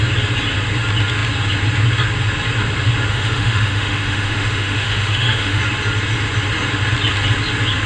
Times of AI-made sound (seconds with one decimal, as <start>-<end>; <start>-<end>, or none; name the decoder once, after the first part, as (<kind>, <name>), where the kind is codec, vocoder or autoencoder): 3.1-5.6 (autoencoder, DAC-VAE)